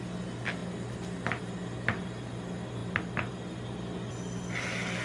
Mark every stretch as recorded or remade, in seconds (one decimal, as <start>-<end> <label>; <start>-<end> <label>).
0.0-5.0 recorded